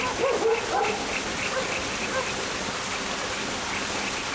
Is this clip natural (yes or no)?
yes